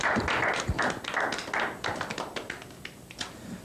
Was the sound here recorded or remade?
recorded